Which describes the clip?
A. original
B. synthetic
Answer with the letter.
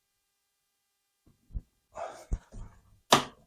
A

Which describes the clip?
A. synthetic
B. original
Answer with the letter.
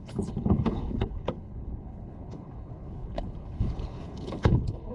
A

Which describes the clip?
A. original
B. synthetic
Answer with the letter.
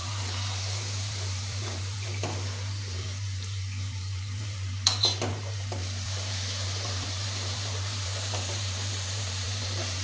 B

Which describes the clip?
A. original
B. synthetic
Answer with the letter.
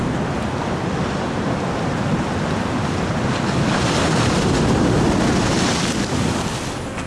A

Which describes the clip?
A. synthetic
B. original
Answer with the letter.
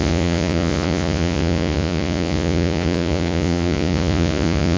A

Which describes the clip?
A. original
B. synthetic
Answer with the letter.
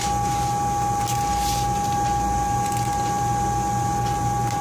A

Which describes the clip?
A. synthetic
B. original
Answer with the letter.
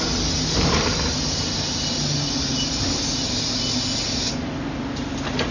B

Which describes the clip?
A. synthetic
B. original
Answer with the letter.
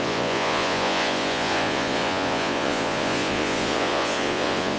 A